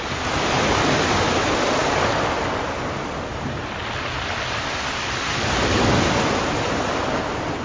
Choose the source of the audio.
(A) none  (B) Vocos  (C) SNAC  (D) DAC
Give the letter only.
A